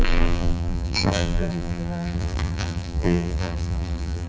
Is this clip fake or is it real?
fake